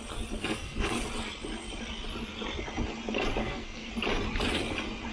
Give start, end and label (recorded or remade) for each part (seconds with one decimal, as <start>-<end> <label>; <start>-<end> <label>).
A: 0.0-0.4 recorded; 0.4-1.0 remade; 1.0-3.4 recorded; 3.4-3.9 remade; 3.9-5.1 recorded